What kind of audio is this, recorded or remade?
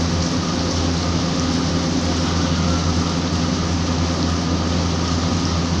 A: recorded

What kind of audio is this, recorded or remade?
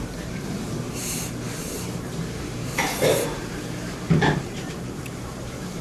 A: remade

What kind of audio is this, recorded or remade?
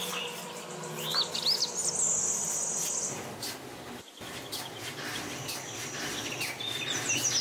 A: recorded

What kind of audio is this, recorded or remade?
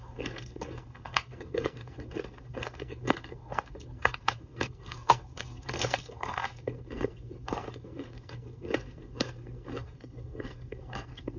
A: remade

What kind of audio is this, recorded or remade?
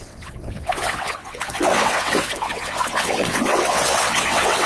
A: remade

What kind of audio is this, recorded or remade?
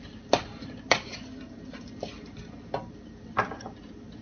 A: recorded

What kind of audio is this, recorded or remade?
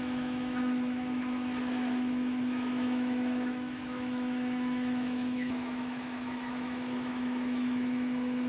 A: remade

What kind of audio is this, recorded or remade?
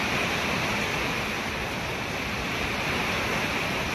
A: recorded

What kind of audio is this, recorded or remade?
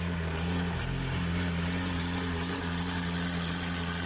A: recorded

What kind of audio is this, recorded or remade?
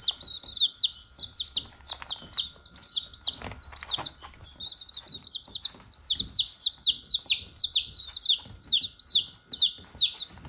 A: recorded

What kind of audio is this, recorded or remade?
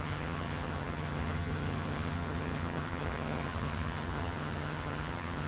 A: remade